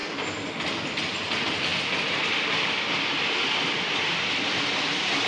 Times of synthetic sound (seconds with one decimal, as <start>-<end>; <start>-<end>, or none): 1.7-4.3